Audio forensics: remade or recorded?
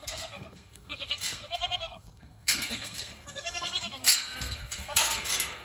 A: remade